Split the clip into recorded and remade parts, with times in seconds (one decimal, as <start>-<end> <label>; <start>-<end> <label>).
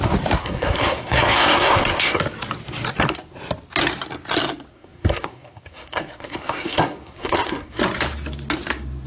0.0-0.4 recorded; 0.4-2.2 remade; 2.2-4.7 recorded; 4.7-7.8 remade; 7.8-9.1 recorded